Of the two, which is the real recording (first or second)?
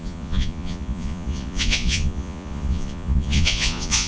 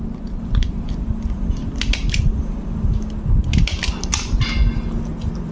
second